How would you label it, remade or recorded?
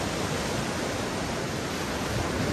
recorded